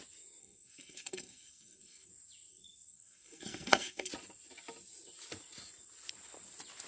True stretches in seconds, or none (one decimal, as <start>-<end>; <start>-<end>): 0.0-0.4; 2.1-2.5; 4.1-6.9